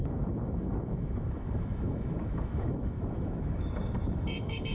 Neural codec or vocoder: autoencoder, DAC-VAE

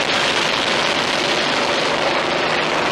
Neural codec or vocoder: none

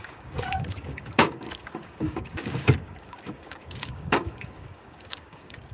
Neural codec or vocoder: codec, DAC